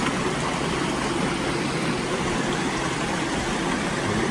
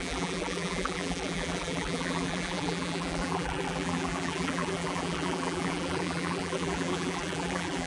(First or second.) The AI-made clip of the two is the second